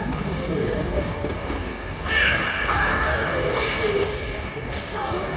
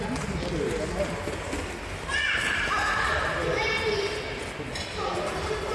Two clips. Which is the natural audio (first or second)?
second